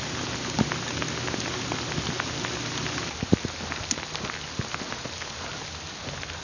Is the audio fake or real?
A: real